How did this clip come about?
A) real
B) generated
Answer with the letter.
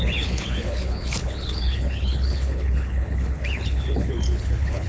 B